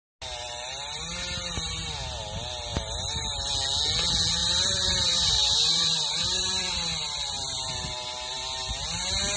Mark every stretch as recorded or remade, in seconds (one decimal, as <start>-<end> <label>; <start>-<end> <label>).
0.0-2.7 recorded; 2.7-3.5 remade; 3.5-4.4 recorded; 4.4-8.7 remade; 8.7-9.4 recorded